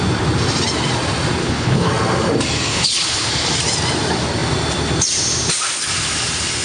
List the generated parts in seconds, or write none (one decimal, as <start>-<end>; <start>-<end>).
1.4-1.9; 2.7-3.3